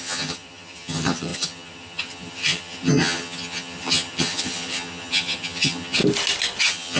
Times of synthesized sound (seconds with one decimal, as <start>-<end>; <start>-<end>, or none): 0.0-6.0; 6.6-7.0